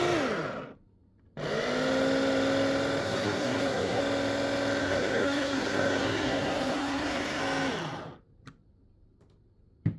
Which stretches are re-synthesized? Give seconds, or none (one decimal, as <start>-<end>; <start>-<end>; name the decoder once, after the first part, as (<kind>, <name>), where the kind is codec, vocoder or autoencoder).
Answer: 3.0-4.0 (codec, SNAC); 4.8-7.4